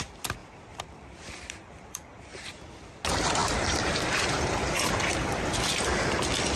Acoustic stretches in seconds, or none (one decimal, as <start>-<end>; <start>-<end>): 0.0-0.4; 2.7-3.4; 4.9-6.6